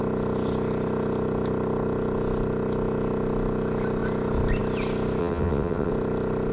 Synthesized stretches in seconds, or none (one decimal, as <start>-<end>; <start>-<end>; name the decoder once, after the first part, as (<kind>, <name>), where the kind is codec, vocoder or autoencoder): 5.2-5.9 (vocoder, WaveNeXt)